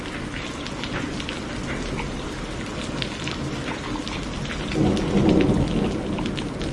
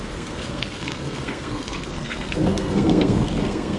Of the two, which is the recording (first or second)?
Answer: first